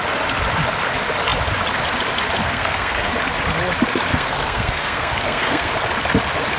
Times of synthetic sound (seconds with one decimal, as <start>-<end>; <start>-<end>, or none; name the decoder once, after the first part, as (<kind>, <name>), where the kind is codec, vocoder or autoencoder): 2.4-3.1 (codec, SNAC); 4.1-5.7

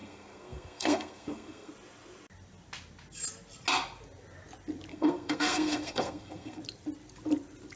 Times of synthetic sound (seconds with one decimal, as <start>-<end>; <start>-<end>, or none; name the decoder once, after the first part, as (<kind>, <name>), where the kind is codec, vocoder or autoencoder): 0.0-1.7 (codec, SNAC); 4.9-6.6

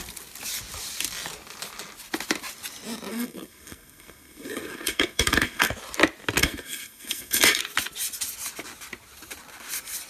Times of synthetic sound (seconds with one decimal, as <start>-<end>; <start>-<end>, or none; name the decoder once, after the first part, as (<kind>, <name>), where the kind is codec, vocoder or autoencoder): 3.1-5.7 (codec, SNAC); 6.4-7.6

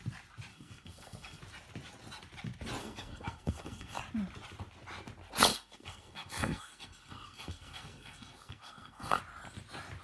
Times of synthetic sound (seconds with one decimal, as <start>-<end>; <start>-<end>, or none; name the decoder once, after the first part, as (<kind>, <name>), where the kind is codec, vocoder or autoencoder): 0.5-1.4 (codec, SNAC); 2.8-4.0; 5.5-9.2

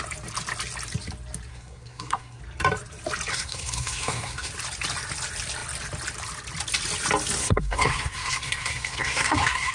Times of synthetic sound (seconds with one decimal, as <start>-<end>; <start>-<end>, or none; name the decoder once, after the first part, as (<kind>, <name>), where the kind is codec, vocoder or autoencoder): 1.5-2.4 (codec, SNAC); 3.3-4.5; 7.4-9.7

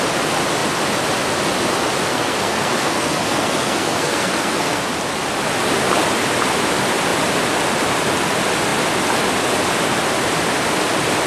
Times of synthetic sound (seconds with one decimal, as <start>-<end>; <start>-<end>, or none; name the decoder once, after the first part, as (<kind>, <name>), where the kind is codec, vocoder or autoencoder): 2.1-4.8 (codec, SNAC)

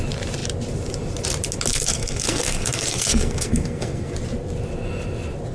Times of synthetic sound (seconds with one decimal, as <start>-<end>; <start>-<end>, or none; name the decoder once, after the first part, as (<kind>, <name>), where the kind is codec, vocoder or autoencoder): 1.7-4.1 (codec, SNAC)